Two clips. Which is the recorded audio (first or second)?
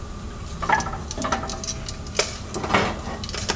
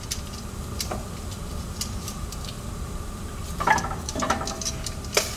first